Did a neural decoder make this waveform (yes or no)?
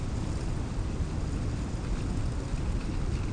no